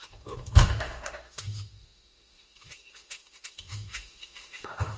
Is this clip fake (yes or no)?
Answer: yes